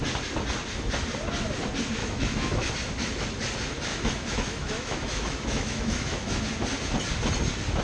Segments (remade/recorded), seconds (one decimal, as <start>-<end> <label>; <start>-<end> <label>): 0.0-2.0 recorded; 2.0-2.7 remade; 2.7-3.9 recorded; 3.9-6.4 remade; 6.4-7.8 recorded